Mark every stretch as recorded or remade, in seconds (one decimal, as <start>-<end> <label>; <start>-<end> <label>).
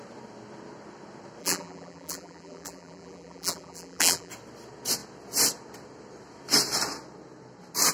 0.0-1.4 recorded; 1.4-4.3 remade; 4.3-7.9 recorded